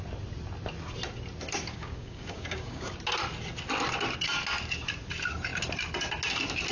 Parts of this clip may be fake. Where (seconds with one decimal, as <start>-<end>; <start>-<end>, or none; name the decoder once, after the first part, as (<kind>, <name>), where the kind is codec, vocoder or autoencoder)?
1.7-2.9 (codec, DAC)